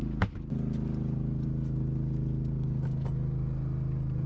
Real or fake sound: real